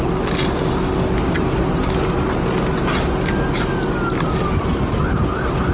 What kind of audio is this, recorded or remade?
recorded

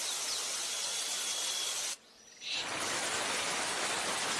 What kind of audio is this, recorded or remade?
recorded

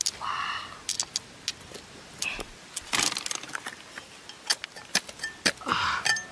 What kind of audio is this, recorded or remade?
recorded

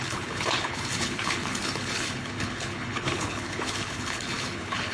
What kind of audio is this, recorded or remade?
remade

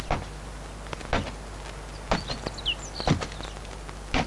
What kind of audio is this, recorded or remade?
recorded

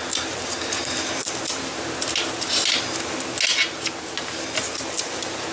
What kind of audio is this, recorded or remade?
recorded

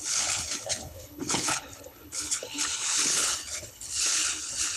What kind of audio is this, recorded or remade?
remade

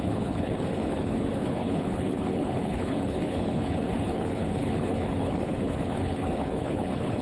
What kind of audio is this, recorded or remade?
remade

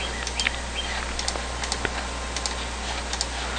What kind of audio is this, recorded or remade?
recorded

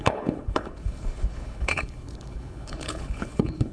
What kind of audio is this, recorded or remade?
remade